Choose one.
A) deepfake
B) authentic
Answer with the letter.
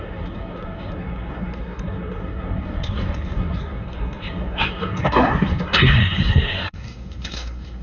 A